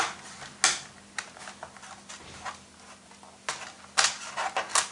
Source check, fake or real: real